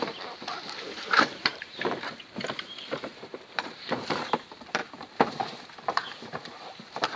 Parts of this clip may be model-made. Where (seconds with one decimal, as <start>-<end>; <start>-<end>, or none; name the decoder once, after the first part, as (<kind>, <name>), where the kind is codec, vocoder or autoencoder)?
0.0-7.2 (vocoder, BigVGAN v2)